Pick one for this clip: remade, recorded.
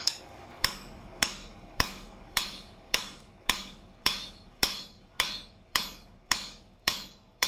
remade